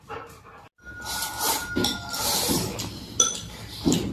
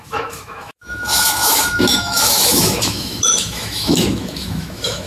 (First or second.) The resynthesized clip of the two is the second